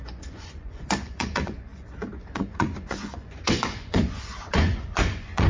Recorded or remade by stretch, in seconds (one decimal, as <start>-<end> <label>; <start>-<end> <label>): 0.0-5.5 remade